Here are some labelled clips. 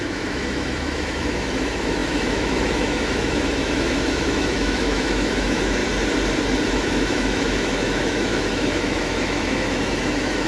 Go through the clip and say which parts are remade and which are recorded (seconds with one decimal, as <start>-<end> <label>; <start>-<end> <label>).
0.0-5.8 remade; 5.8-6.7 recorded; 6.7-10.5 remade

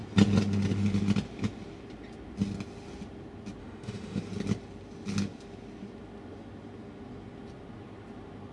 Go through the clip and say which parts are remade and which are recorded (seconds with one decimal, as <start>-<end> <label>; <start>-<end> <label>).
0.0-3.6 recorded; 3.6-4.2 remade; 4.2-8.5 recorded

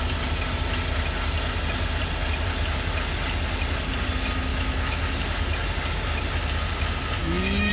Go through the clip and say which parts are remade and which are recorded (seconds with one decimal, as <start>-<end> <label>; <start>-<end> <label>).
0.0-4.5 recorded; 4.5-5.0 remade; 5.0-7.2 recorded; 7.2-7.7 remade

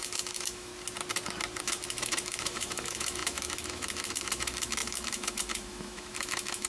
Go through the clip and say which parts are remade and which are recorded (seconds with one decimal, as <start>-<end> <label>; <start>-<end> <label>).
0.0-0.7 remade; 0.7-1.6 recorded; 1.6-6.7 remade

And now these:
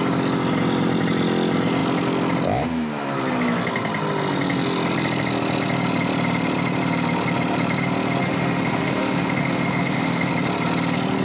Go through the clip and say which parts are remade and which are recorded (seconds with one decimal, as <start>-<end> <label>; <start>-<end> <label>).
0.0-8.2 recorded; 8.2-10.3 remade; 10.3-11.2 recorded